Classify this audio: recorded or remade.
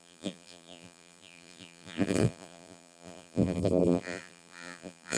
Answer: remade